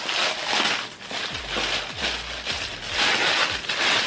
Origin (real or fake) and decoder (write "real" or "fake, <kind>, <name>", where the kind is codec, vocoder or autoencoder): real